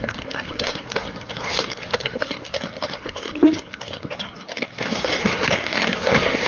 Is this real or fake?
fake